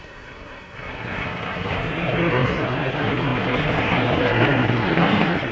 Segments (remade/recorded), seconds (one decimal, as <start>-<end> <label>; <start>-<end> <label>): 0.0-5.5 remade